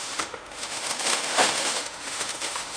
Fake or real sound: fake